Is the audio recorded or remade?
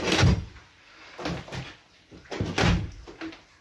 recorded